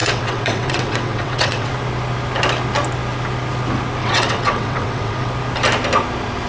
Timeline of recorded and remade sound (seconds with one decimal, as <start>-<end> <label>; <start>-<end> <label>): 0.0-1.7 remade; 1.7-4.0 recorded; 4.0-5.3 remade; 5.3-6.5 recorded